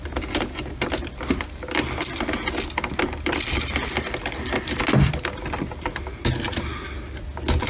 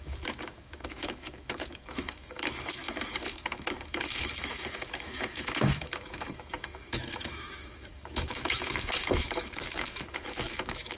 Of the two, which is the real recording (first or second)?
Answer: first